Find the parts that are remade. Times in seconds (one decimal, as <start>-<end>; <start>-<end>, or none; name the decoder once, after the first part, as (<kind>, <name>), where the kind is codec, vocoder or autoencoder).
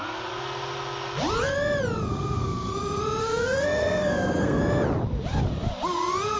2.1-2.7 (codec, SNAC); 3.2-4.6